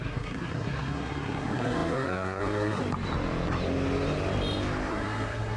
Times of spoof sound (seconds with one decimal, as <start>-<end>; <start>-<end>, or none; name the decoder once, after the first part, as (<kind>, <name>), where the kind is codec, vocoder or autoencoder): 0.0-2.8 (codec, SNAC); 4.9-5.6